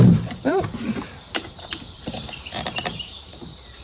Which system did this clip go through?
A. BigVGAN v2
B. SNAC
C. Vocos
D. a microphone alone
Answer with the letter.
A